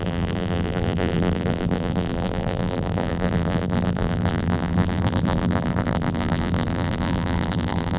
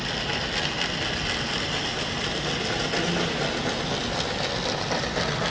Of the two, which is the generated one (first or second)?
first